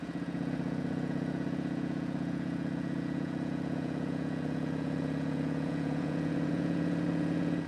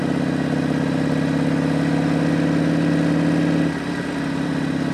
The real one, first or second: second